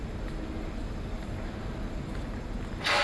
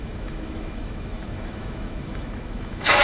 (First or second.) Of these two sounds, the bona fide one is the first